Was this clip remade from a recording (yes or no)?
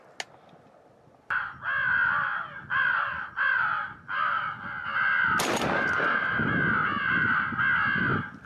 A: no